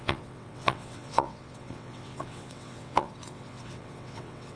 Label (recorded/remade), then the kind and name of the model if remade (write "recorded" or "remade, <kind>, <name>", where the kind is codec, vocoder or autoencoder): remade, vocoder, WaveNeXt